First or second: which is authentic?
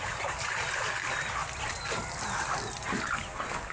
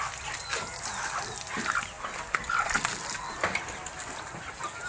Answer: second